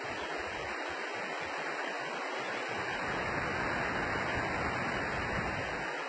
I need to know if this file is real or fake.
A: real